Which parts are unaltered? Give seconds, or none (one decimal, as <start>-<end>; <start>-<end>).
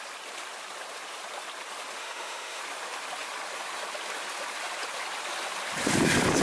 0.0-2.0; 2.6-6.4